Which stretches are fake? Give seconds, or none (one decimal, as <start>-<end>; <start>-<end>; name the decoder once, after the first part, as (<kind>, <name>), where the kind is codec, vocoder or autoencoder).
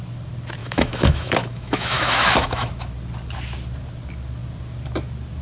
0.6-2.7 (autoencoder, DAC-VAE)